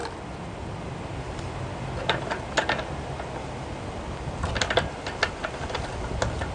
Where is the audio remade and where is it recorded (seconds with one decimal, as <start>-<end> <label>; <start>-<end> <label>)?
0.0-6.5 recorded